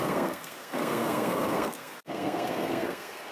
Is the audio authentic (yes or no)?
no